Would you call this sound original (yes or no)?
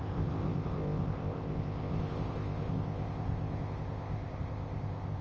no